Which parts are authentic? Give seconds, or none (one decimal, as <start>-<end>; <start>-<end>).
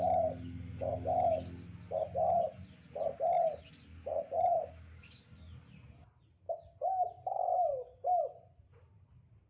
0.0-4.1; 4.6-9.5